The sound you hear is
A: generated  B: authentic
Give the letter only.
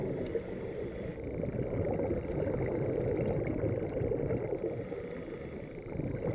B